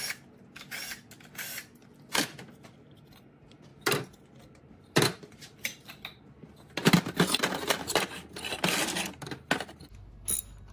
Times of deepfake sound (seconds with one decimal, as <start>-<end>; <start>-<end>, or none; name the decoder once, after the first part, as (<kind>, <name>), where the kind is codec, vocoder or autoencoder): none